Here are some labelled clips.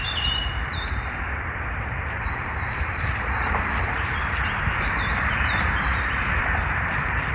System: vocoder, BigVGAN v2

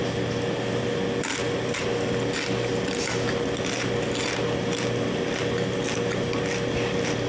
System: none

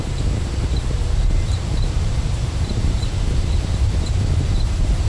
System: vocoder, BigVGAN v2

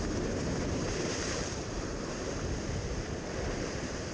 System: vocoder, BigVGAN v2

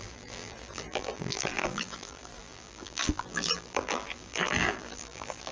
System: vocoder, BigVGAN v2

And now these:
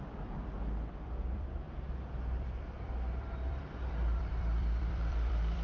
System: vocoder, BigVGAN v2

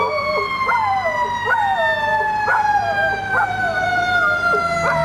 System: none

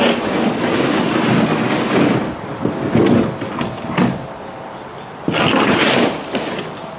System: none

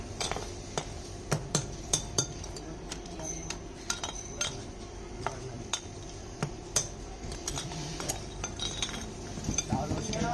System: vocoder, BigVGAN v2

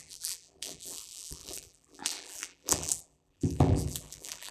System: vocoder, BigVGAN v2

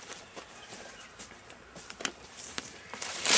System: vocoder, BigVGAN v2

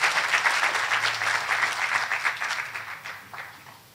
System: none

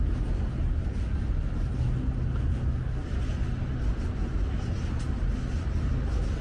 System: none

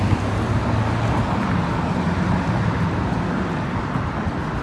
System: none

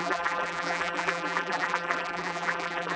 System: vocoder, BigVGAN v2